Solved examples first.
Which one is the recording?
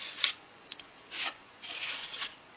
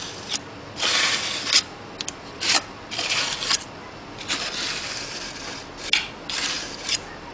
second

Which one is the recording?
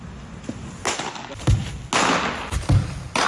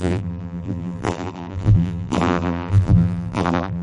first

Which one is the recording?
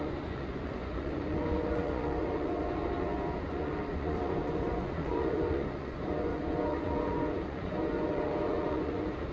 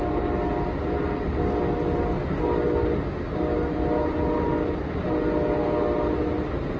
second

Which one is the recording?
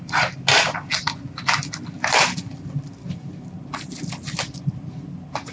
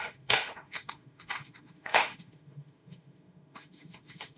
first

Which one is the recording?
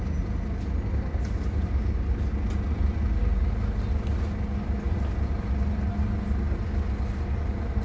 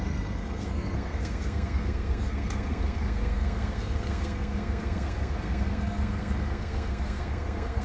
first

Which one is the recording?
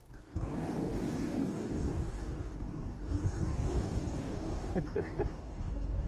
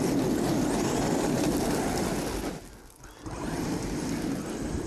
second